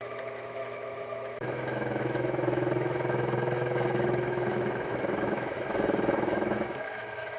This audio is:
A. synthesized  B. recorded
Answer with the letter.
A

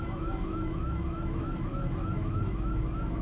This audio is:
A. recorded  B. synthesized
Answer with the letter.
B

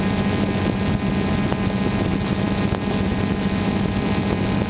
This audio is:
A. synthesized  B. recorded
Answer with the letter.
B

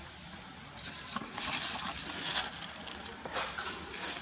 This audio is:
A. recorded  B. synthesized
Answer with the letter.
A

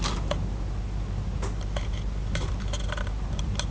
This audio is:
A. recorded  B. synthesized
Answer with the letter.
A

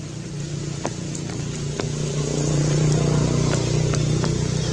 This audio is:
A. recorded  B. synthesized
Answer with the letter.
A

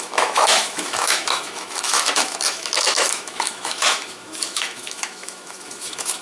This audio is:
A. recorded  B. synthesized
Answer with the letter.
B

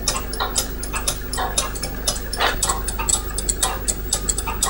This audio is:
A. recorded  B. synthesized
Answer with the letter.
A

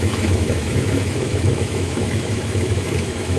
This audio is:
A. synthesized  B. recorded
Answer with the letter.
A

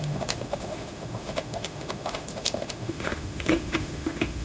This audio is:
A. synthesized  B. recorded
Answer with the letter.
A